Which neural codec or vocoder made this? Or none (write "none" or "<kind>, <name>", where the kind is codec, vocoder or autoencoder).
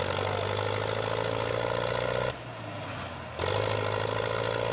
none